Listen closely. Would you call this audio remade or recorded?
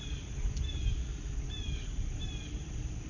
recorded